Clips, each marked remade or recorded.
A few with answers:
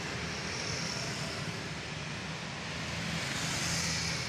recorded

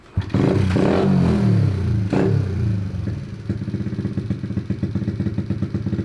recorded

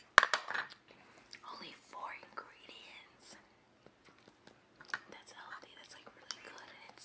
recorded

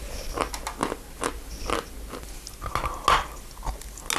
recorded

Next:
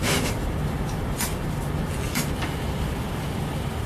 recorded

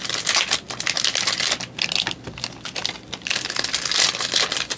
recorded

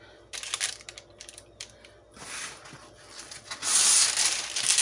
recorded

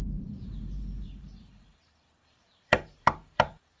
remade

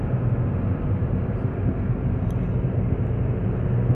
remade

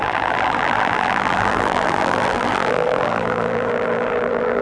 remade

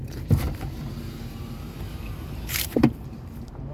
remade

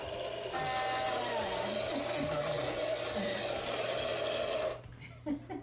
recorded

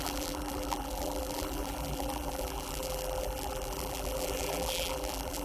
remade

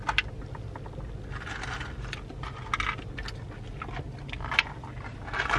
recorded